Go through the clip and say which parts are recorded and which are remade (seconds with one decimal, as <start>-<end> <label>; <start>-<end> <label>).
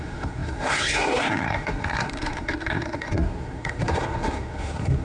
0.0-5.0 remade